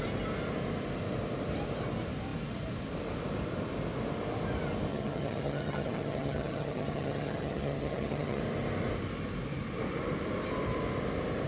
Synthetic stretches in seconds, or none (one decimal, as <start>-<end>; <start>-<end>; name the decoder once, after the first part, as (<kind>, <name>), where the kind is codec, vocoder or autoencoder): 4.9-8.4 (vocoder, HiFi-GAN)